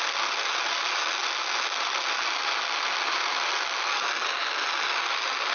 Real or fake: real